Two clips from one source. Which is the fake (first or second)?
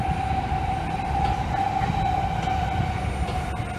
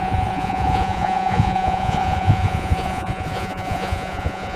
second